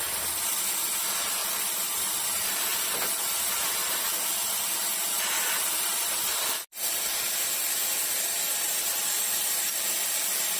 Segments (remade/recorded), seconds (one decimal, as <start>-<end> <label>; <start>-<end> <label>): 0.0-10.6 recorded